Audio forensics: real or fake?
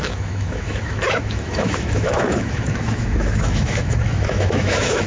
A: fake